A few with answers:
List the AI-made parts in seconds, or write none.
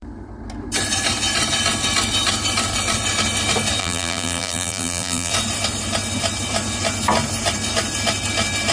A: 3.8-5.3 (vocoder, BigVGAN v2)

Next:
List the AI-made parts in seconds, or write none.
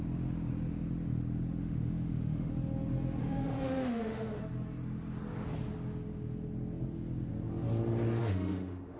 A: 1.6-2.5 (autoencoder, DAC-VAE); 3.2-4.4; 8.2-9.0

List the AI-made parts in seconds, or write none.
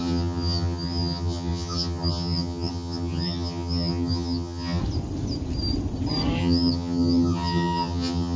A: 0.0-4.8 (vocoder, HiFi-GAN); 6.4-8.4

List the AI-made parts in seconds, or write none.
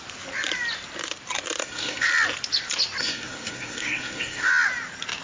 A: 1.6-2.1 (codec, SNAC); 3.0-4.5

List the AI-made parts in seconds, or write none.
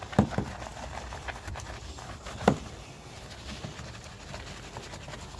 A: 0.7-3.9 (vocoder, BigVGAN v2)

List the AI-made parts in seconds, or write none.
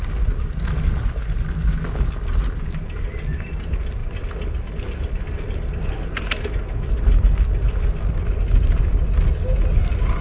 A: 4.0-5.9 (vocoder, BigVGAN v2)